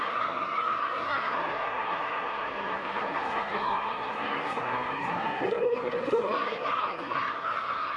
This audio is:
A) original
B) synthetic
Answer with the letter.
B